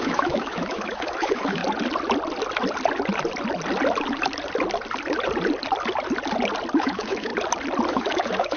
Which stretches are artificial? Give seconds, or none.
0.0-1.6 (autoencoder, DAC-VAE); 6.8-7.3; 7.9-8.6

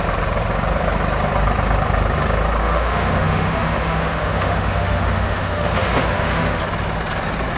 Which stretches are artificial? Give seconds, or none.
2.6-6.6 (autoencoder, DAC-VAE)